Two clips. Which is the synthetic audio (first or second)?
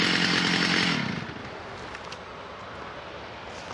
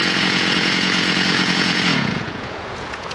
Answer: second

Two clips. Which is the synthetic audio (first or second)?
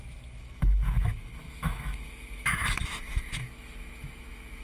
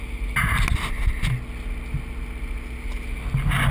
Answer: first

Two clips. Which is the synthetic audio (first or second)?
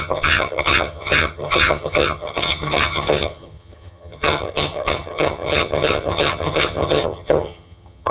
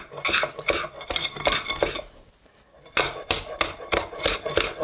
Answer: first